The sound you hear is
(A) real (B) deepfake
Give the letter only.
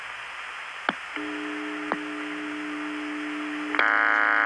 A